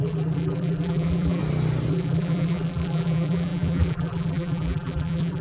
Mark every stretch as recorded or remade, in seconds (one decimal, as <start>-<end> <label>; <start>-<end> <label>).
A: 0.0-1.4 remade; 1.4-1.9 recorded; 1.9-5.4 remade